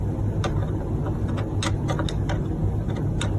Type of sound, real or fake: real